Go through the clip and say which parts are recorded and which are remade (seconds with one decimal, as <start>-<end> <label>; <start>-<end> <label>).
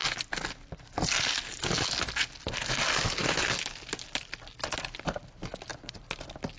0.0-6.6 recorded